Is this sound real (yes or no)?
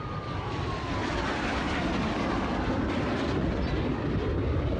yes